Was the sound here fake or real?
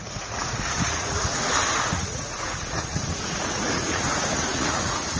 fake